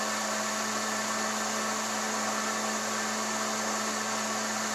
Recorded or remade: recorded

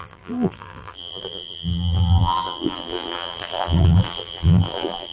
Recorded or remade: remade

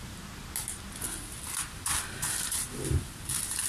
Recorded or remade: recorded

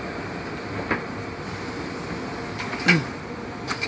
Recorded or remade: remade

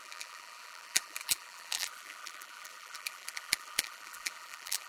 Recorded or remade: remade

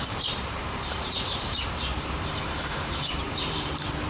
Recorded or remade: remade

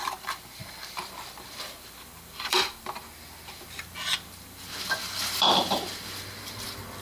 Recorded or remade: remade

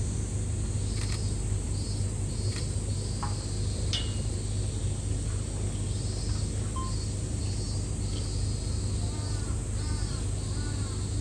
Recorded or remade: recorded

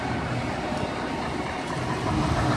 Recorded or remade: remade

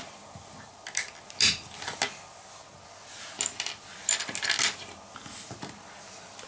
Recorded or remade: recorded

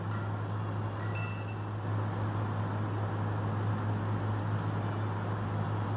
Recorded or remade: recorded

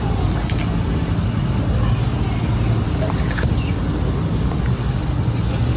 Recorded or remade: recorded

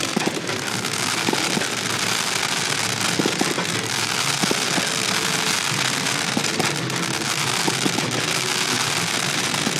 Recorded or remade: recorded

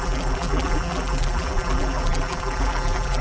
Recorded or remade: remade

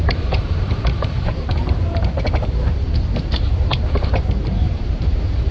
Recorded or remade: remade